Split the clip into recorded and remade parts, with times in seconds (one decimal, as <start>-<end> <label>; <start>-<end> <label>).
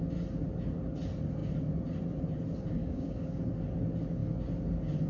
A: 0.0-2.8 recorded; 2.8-3.4 remade; 3.4-5.1 recorded